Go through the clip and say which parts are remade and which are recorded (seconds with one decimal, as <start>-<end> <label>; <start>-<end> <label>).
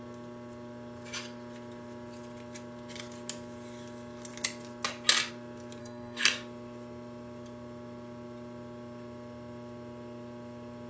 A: 0.0-5.8 recorded; 5.8-6.3 remade; 6.3-10.9 recorded